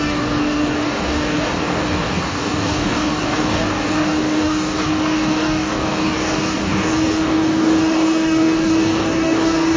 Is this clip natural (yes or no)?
no